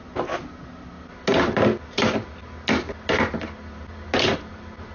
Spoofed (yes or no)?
no